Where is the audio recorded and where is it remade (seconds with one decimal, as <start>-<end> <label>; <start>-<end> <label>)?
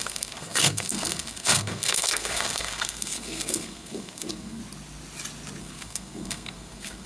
0.0-4.6 remade; 4.6-5.6 recorded; 5.6-7.1 remade